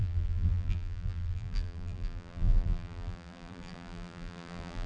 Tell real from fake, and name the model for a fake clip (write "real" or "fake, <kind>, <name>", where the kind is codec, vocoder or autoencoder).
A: fake, vocoder, BigVGAN v2